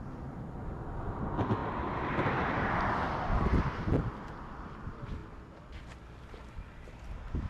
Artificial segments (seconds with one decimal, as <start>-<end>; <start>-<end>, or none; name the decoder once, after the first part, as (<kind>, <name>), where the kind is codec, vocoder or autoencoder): 1.6-4.1 (vocoder, BigVGAN v2)